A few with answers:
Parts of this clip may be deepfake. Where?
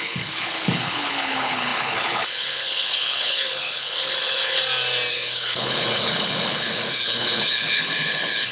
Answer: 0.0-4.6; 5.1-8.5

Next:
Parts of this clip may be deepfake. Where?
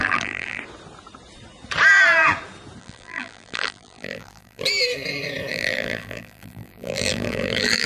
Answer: 0.0-0.6; 2.8-4.6; 5.5-7.9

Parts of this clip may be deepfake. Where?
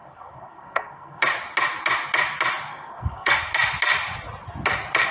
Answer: 0.0-1.2; 2.7-3.4